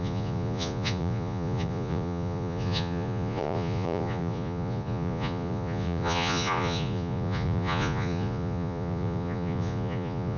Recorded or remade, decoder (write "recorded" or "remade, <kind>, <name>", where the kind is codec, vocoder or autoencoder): remade, vocoder, Vocos